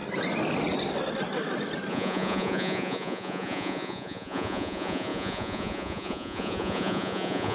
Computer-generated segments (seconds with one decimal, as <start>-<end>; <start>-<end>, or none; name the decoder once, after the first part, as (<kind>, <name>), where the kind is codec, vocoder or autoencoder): 1.9-7.5 (vocoder, Vocos)